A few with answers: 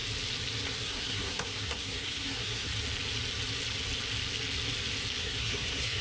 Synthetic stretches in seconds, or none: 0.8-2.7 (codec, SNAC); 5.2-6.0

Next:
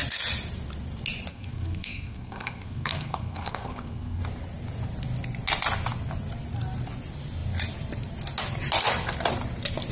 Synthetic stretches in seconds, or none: 1.3-4.2 (codec, SNAC)

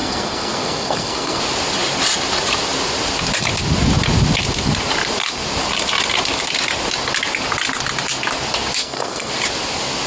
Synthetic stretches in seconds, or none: 0.0-1.4 (codec, SNAC); 8.8-9.3